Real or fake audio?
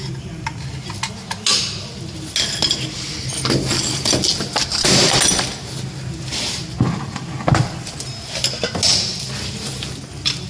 real